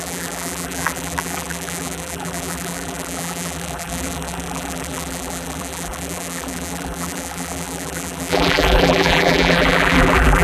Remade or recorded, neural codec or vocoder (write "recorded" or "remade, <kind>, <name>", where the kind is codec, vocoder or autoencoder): remade, vocoder, BigVGAN v2